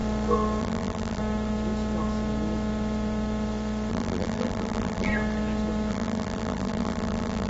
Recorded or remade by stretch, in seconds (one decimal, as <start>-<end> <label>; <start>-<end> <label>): 0.0-0.6 recorded; 0.6-1.2 remade; 1.2-3.9 recorded; 3.9-5.1 remade; 5.1-5.9 recorded; 5.9-7.5 remade